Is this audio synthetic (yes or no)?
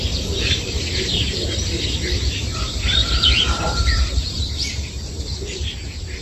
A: yes